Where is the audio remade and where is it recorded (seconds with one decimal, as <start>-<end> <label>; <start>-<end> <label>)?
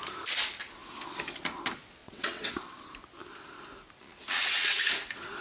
0.0-2.0 recorded; 2.0-2.5 remade; 2.5-4.3 recorded; 4.3-4.8 remade; 4.8-5.4 recorded